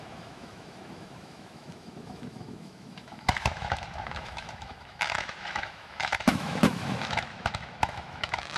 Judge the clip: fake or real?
fake